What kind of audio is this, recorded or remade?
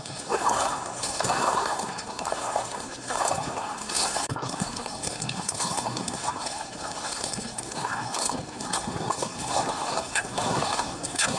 remade